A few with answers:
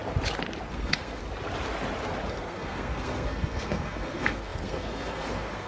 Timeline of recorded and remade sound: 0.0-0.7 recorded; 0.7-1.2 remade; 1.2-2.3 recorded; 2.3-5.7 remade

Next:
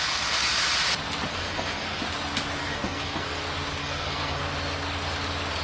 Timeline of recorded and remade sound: 0.0-1.3 recorded; 1.3-2.0 remade; 2.0-2.6 recorded; 2.6-3.4 remade; 3.4-3.8 recorded; 3.8-4.4 remade; 4.4-5.6 recorded

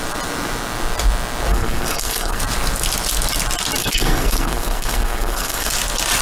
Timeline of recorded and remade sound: 0.0-1.5 recorded; 1.5-2.4 remade; 2.4-3.8 recorded; 3.8-5.7 remade; 5.7-6.2 recorded

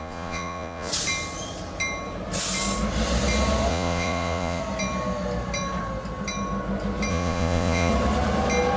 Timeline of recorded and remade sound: 0.0-0.9 remade; 0.9-3.7 recorded; 3.7-4.6 remade; 4.6-7.1 recorded; 7.1-7.9 remade; 7.9-8.8 recorded

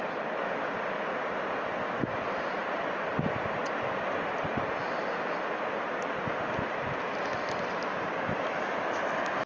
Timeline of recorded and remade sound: 0.0-2.6 recorded; 2.6-3.6 remade; 3.6-9.5 recorded

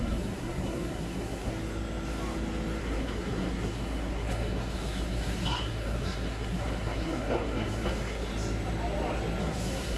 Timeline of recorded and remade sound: 0.0-1.5 remade; 1.5-2.8 recorded; 2.8-8.3 remade; 8.3-9.4 recorded; 9.4-10.0 remade